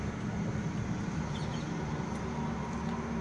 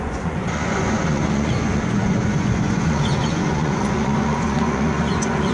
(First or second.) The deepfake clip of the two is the second